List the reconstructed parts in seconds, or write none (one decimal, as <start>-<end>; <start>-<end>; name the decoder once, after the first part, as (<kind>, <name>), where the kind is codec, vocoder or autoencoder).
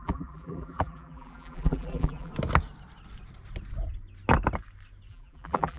0.0-2.3 (vocoder, BigVGAN v2); 5.1-5.8